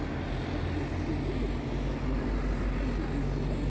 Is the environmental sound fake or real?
real